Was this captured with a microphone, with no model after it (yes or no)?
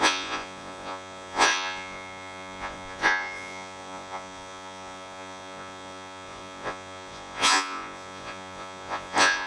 no